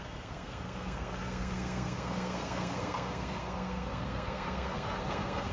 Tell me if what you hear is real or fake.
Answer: fake